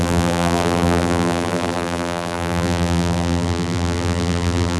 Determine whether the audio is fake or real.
fake